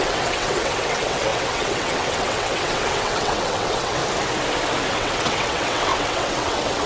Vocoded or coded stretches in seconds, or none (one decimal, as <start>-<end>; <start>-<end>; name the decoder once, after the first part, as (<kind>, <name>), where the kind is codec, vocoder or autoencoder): 0.0-4.0 (vocoder, WaveNeXt); 4.9-6.9